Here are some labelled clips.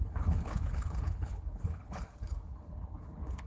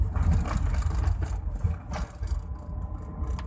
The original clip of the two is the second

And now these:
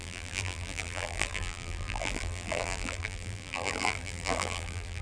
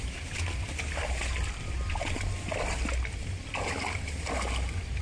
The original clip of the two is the second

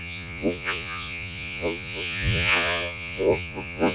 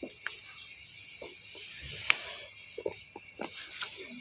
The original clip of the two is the second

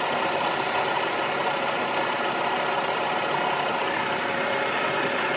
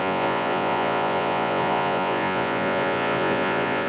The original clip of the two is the first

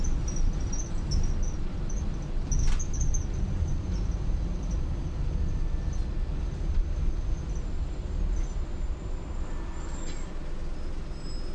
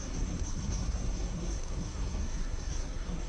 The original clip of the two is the first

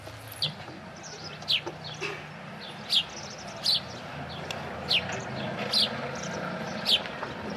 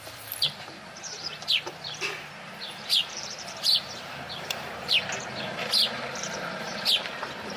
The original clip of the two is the first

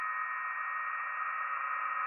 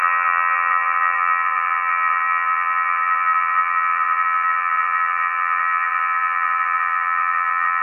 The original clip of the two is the first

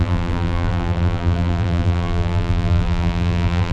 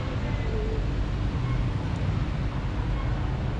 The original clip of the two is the second